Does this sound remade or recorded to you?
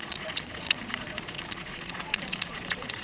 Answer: remade